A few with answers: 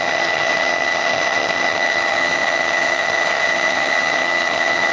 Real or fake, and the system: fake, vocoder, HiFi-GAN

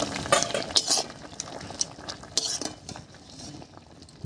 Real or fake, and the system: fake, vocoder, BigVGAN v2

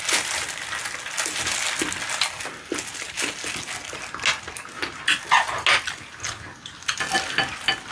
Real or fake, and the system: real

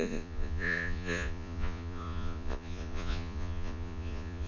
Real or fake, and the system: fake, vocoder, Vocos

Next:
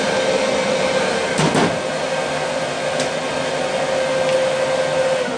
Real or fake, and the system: real